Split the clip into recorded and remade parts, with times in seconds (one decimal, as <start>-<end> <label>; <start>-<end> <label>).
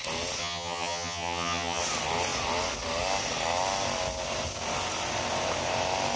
0.0-0.4 recorded; 0.4-1.8 remade; 1.8-6.2 recorded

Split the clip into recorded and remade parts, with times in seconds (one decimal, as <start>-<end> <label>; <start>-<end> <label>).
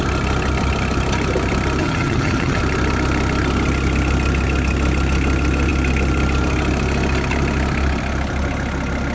0.0-1.8 recorded; 1.8-2.6 remade; 2.6-9.1 recorded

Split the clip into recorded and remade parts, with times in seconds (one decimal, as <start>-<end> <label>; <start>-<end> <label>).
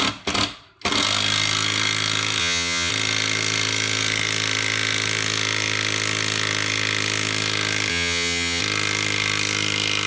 0.0-2.4 recorded; 2.4-2.9 remade; 2.9-7.9 recorded; 7.9-8.6 remade; 8.6-10.1 recorded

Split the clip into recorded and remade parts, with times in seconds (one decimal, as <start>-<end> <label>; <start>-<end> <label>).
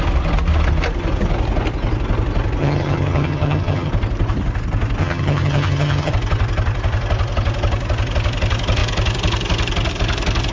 0.0-2.6 recorded; 2.6-3.9 remade; 3.9-5.0 recorded; 5.0-6.1 remade; 6.1-10.5 recorded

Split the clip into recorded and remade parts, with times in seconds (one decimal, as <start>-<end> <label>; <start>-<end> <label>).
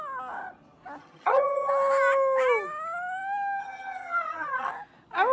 0.0-1.0 recorded; 1.0-1.7 remade; 1.7-3.6 recorded; 3.6-4.7 remade; 4.7-5.3 recorded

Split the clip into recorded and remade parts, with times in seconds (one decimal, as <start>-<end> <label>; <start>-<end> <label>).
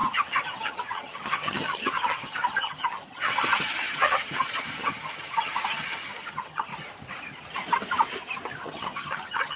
0.0-6.7 remade; 6.7-8.6 recorded; 8.6-9.6 remade